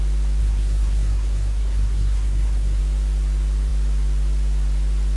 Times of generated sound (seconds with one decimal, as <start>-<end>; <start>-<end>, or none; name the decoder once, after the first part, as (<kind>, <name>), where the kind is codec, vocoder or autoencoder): 0.4-2.8 (codec, SNAC)